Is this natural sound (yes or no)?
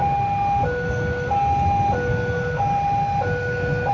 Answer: yes